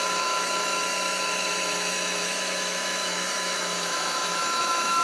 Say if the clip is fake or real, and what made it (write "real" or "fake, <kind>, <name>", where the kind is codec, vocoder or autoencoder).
fake, autoencoder, DAC-VAE